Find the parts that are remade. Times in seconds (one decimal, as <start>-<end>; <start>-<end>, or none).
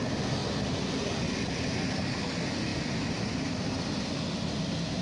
none